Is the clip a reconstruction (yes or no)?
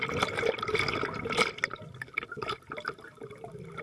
no